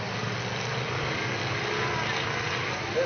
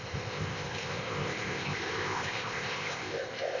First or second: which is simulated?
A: second